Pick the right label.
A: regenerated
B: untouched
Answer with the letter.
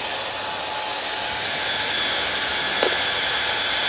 B